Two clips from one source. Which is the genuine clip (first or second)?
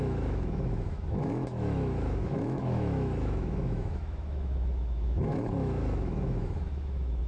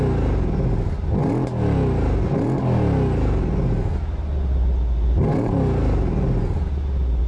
second